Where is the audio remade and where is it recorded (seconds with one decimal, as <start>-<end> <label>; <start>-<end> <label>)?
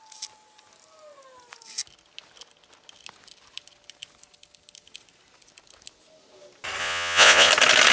0.0-6.8 recorded; 6.8-7.5 remade; 7.5-7.9 recorded